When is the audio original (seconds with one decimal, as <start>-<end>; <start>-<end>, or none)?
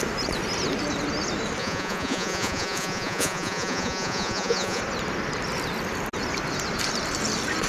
0.0-1.6; 4.8-7.7